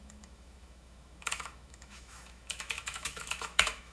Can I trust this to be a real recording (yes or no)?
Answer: no